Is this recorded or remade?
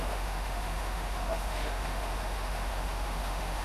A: remade